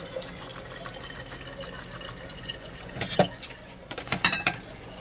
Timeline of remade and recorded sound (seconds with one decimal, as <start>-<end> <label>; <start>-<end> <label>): 0.0-0.5 remade; 0.5-2.3 recorded; 2.3-5.0 remade

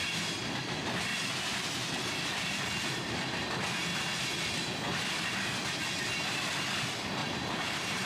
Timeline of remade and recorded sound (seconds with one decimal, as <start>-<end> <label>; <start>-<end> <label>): 0.0-1.1 recorded; 1.1-2.5 remade; 2.5-7.2 recorded; 7.2-8.1 remade